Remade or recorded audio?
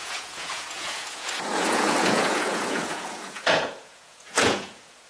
remade